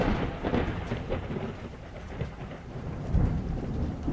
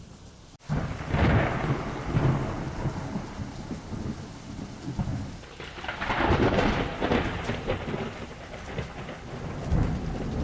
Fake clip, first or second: first